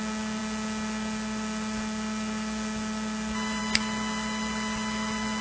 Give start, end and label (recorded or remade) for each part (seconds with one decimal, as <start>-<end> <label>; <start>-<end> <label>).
0.0-5.4 recorded